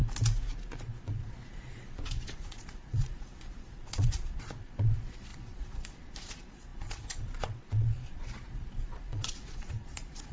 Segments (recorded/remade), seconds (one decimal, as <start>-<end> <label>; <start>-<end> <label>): 0.0-0.8 recorded; 0.8-10.3 remade